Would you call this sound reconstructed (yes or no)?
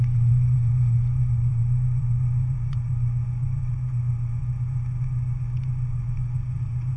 yes